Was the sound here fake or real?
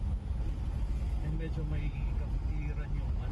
real